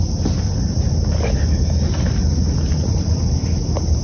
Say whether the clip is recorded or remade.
recorded